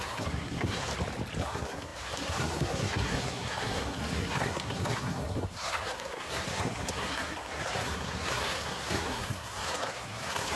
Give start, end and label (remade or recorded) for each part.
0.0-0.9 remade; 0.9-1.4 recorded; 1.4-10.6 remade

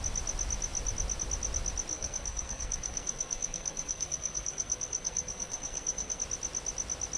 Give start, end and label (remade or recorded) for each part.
0.0-1.9 recorded; 1.9-6.2 remade; 6.2-7.2 recorded